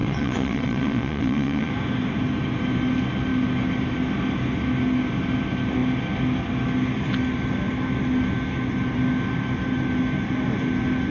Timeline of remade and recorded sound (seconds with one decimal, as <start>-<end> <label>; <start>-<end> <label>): 0.0-1.7 remade; 1.7-11.1 recorded